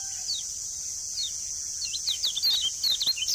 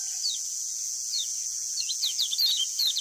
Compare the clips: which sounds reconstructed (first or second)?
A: second